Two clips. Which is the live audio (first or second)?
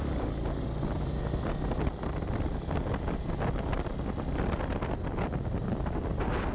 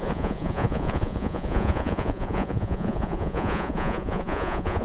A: first